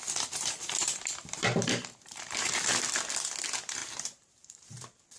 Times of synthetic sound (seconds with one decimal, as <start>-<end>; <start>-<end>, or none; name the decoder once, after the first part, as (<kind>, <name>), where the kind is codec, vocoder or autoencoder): 0.8-2.7 (vocoder, BigVGAN v2); 3.8-5.2